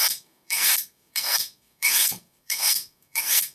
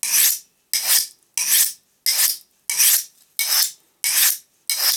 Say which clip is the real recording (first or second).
second